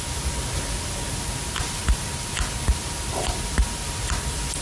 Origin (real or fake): real